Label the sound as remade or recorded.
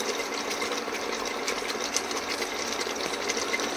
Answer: recorded